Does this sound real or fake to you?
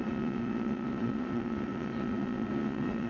fake